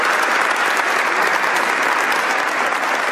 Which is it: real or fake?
real